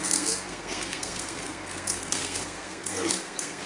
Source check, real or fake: fake